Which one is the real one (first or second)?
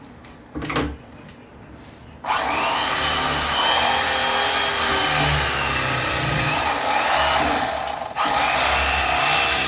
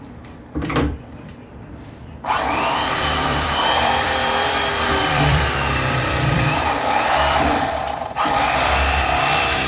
first